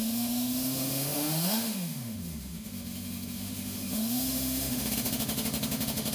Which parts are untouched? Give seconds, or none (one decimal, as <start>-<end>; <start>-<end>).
none